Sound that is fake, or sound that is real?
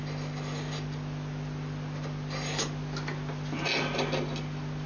real